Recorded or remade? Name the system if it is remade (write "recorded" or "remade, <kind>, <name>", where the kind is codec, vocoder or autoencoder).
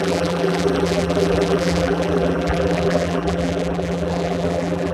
remade, vocoder, BigVGAN v2